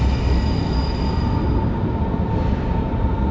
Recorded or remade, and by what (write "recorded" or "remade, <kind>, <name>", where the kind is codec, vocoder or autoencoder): recorded